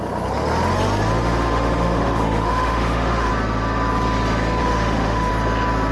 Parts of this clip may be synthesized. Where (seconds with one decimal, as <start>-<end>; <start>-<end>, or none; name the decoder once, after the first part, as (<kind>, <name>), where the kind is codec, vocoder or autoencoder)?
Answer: 1.2-3.3 (autoencoder, DAC-VAE); 4.6-5.3